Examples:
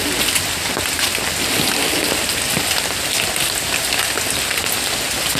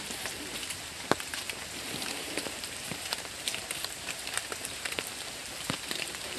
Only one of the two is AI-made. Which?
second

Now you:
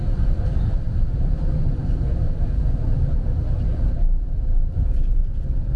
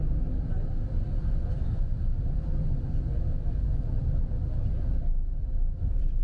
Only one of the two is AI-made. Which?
first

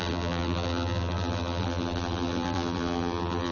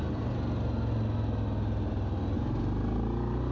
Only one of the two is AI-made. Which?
first